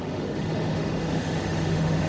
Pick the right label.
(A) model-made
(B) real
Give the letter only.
A